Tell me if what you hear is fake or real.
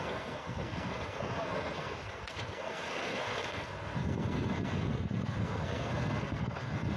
fake